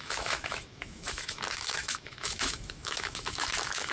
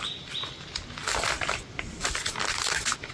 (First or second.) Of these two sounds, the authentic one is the second